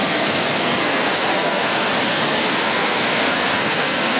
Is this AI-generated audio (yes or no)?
yes